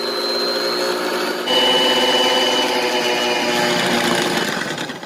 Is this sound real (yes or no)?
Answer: yes